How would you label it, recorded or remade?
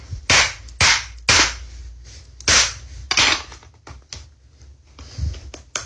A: recorded